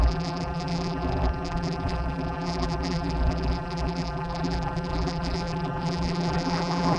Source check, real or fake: fake